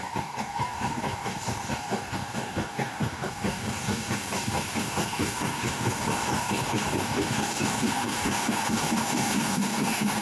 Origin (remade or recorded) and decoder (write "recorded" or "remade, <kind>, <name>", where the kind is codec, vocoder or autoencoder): remade, codec, DAC